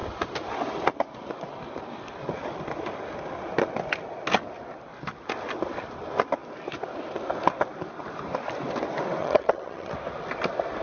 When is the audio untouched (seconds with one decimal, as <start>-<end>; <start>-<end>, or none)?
0.0-9.2; 9.9-10.8